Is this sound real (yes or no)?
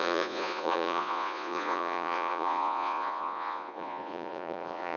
no